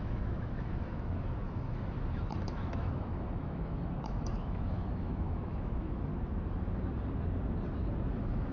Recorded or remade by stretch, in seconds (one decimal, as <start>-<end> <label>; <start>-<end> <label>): 0.0-6.1 remade; 6.1-8.1 recorded; 8.1-8.5 remade